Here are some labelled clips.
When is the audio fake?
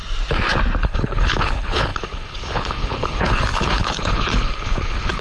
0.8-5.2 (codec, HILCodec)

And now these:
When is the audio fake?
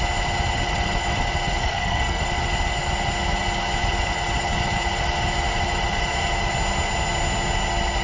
1.6-2.2 (codec, SNAC)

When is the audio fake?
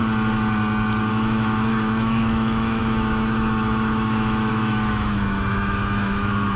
1.1-6.6 (autoencoder, DAC-VAE)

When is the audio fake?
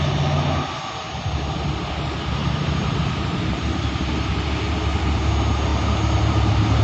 2.4-4.4 (vocoder, BigVGAN v2)